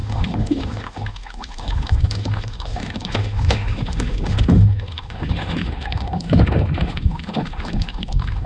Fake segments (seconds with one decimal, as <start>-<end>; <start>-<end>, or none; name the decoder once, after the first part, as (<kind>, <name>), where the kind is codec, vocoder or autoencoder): 0.0-8.5 (autoencoder, DAC-VAE)